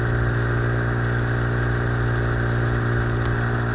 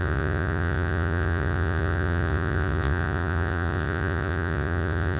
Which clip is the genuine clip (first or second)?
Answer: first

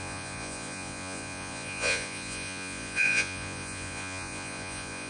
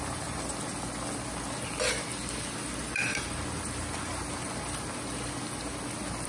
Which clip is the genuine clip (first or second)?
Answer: second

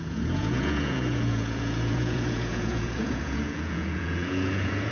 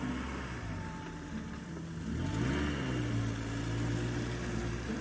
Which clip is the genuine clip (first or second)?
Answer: second